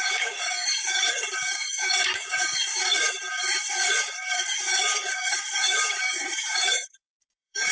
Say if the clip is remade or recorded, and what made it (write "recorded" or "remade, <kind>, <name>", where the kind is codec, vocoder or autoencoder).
remade, codec, DAC